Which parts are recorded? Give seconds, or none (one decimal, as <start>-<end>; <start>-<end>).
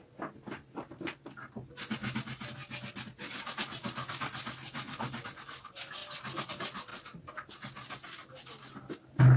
0.0-9.4